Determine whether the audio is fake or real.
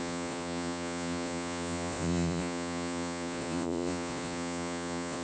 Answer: fake